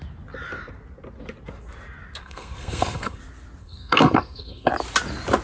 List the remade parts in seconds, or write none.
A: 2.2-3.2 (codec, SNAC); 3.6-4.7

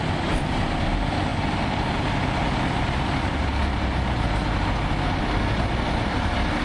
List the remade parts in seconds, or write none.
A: none

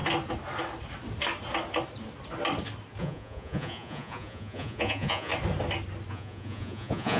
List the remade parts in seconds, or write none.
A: 3.0-5.3 (vocoder, Vocos); 6.1-7.2

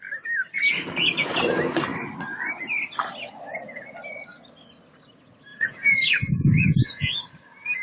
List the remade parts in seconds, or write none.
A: 5.5-7.2 (vocoder, Vocos)

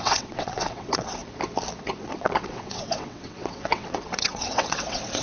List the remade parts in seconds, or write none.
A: 0.0-1.2 (vocoder, WaveNeXt); 1.8-5.2

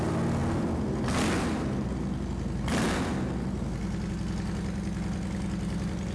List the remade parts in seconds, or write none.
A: none